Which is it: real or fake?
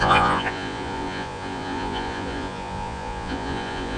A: fake